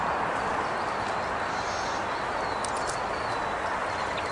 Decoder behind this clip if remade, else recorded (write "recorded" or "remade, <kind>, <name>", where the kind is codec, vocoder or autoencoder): recorded